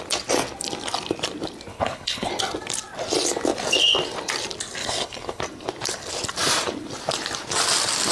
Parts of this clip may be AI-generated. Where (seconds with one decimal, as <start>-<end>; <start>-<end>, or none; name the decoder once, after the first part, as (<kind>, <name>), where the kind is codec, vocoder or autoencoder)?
1.7-2.3 (codec, HILCodec); 4.8-5.4